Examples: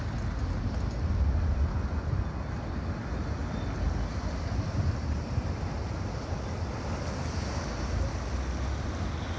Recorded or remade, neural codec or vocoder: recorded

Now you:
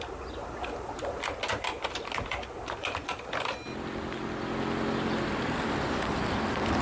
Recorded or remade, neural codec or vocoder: recorded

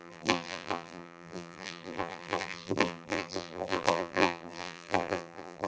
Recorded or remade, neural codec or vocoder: remade, vocoder, BigVGAN v2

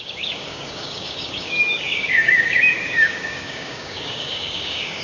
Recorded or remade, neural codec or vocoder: remade, codec, DAC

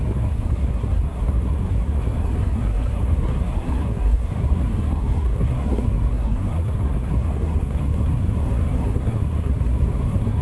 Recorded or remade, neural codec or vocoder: remade, codec, SNAC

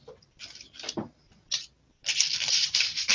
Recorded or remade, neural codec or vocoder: recorded